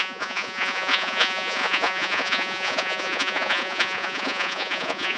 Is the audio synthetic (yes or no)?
yes